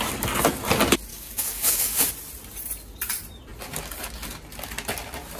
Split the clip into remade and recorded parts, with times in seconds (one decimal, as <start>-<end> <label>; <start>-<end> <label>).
0.0-1.1 recorded; 1.1-2.1 remade; 2.1-5.4 recorded

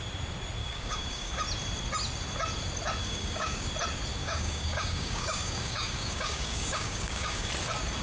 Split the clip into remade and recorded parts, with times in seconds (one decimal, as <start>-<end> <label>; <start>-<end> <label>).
0.0-0.6 recorded; 0.6-1.3 remade; 1.3-3.0 recorded; 3.0-3.7 remade; 3.7-4.2 recorded; 4.2-7.5 remade; 7.5-8.0 recorded

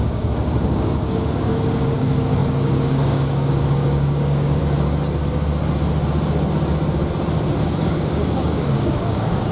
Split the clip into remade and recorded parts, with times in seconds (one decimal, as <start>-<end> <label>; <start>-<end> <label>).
0.0-4.6 remade; 4.6-7.9 recorded; 7.9-9.5 remade

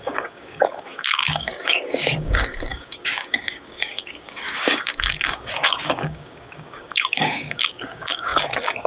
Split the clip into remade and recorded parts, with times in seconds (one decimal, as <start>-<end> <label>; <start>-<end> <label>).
0.0-8.9 remade